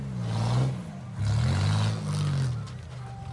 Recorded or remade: recorded